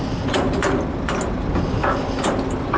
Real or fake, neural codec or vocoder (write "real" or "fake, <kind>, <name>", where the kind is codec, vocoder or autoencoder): real